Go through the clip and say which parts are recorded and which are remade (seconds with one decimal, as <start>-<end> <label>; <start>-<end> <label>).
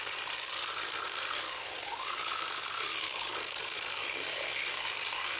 0.0-5.4 recorded